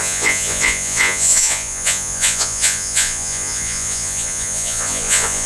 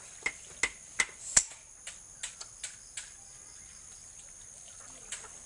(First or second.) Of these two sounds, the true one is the second